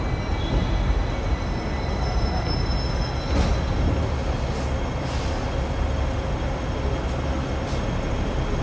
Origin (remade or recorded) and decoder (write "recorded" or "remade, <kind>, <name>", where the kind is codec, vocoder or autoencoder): recorded